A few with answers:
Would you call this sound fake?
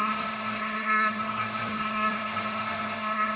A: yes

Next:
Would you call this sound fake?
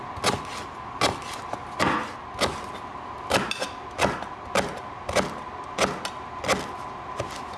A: no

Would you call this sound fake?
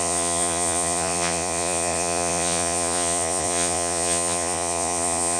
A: yes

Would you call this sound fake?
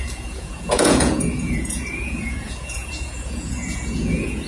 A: yes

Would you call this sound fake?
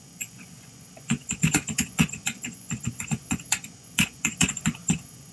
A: yes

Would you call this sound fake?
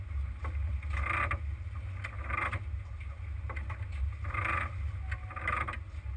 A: no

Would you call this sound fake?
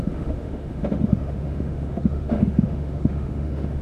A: yes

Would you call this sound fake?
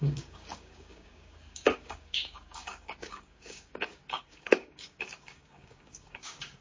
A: yes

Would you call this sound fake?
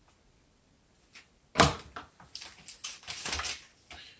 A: no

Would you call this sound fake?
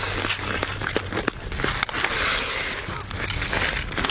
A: no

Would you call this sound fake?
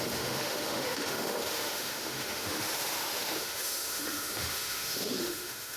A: yes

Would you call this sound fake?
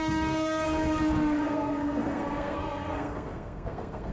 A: yes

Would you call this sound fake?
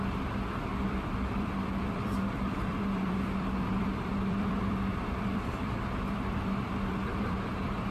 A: yes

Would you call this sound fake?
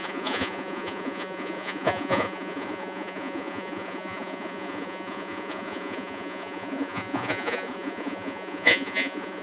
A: yes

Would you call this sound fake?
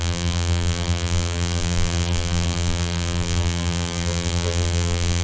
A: yes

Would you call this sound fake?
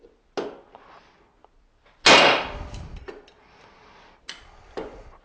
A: no